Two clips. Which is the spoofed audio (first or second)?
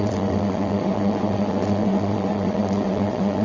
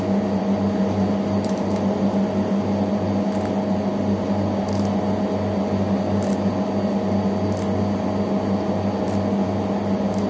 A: first